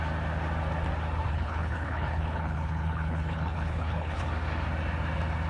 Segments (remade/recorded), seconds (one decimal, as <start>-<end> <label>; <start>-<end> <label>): 0.0-1.3 recorded; 1.3-4.2 remade; 4.2-5.5 recorded